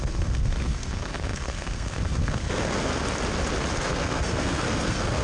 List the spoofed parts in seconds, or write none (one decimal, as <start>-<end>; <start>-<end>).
0.0-2.9; 3.8-5.2